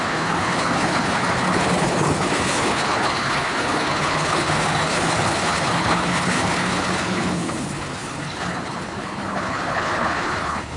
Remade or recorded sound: remade